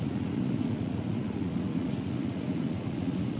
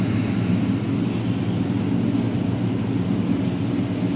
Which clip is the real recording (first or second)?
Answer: second